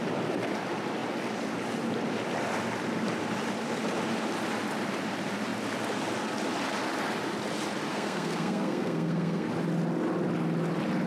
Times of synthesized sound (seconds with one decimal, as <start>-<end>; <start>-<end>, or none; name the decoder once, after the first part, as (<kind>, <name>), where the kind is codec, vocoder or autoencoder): 7.9-9.5 (codec, SNAC)